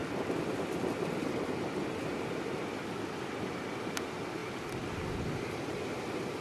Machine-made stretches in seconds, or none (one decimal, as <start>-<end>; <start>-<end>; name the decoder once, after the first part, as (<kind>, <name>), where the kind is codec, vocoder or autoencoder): none